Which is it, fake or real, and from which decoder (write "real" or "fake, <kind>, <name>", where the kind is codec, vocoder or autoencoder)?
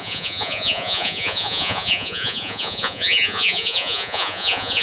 fake, vocoder, Vocos